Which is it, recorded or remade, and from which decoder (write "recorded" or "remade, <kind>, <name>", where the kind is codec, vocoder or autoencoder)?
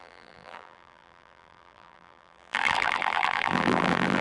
remade, vocoder, BigVGAN v2